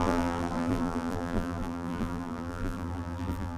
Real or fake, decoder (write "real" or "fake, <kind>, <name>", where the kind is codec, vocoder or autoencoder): fake, vocoder, BigVGAN v2